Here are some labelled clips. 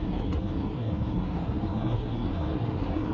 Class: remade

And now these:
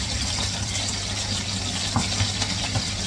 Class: remade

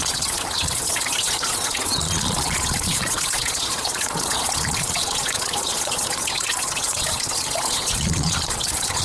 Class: remade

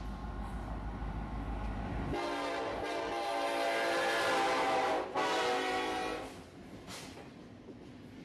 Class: recorded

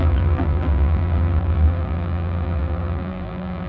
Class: remade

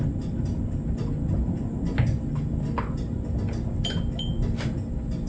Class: recorded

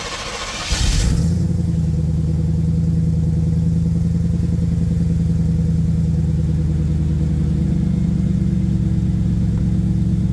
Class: recorded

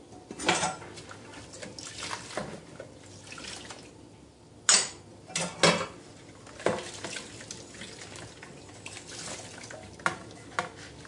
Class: recorded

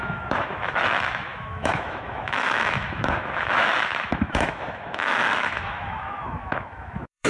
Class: remade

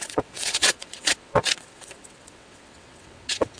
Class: remade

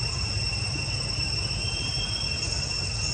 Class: recorded